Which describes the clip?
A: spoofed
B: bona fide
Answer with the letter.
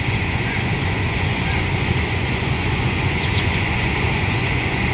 A